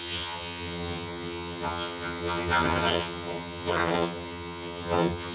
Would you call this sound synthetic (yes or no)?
yes